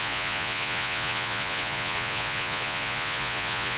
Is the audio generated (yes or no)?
yes